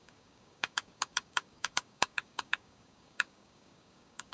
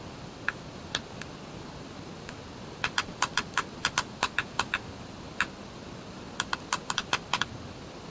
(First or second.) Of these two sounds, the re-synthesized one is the first